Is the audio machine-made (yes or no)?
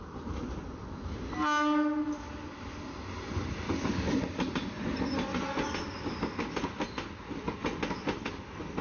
no